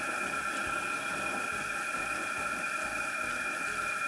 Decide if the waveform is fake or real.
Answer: fake